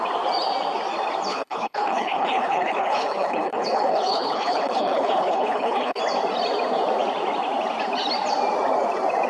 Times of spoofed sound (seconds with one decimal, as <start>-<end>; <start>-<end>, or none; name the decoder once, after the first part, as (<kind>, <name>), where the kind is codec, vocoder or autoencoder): 1.3-6.0 (codec, HILCodec)